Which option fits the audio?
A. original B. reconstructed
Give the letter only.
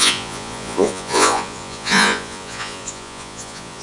B